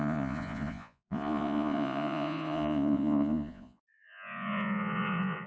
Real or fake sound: fake